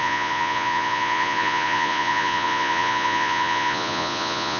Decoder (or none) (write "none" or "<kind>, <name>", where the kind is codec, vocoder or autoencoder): vocoder, Vocos